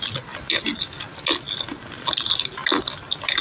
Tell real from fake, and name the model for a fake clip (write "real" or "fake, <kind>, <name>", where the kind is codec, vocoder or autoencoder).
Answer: real